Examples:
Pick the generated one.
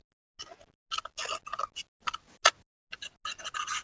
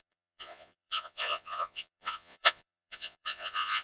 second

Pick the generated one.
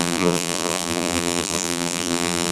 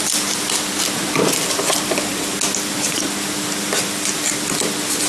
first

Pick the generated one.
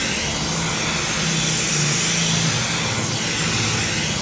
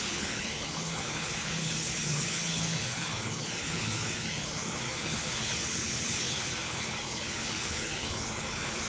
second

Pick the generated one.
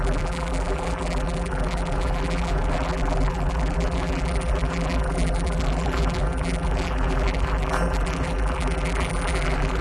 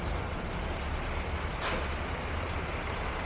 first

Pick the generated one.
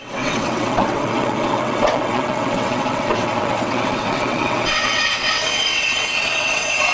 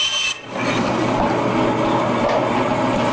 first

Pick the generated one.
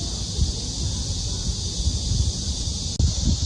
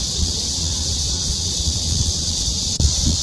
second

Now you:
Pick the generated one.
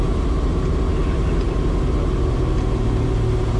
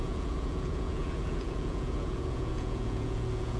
second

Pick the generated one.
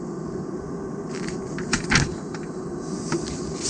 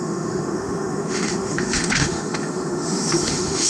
second